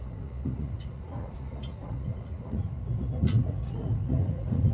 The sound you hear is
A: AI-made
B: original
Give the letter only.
A